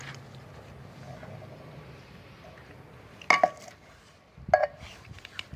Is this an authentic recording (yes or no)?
yes